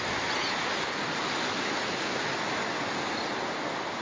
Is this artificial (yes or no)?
no